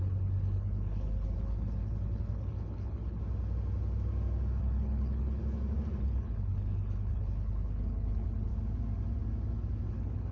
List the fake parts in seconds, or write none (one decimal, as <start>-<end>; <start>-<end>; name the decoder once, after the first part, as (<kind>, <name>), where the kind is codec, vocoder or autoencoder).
0.0-3.2 (codec, HILCodec); 4.6-5.4; 6.0-8.5; 9.9-10.3